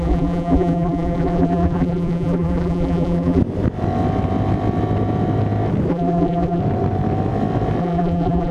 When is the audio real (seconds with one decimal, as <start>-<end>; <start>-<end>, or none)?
3.4-5.9; 6.6-7.8